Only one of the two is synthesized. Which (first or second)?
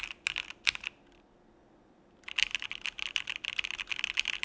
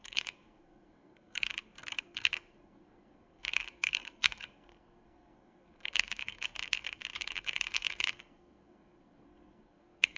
second